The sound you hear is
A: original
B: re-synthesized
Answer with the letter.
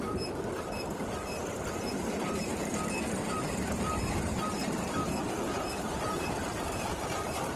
B